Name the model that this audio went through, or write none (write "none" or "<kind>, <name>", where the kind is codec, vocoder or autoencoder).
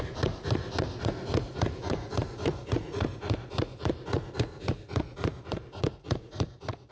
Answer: vocoder, Vocos